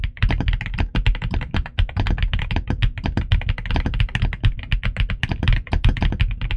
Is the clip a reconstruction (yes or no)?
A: no